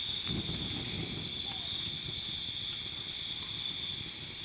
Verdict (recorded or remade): recorded